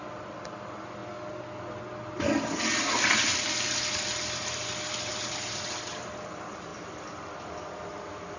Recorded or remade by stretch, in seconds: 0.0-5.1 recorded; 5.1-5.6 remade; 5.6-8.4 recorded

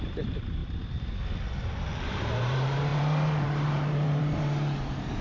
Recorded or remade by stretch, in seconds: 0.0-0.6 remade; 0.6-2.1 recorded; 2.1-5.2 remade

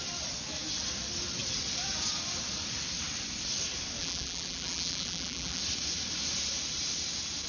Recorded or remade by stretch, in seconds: 0.0-4.0 recorded; 4.0-5.6 remade; 5.6-7.5 recorded